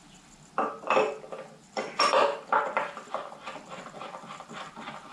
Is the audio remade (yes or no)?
yes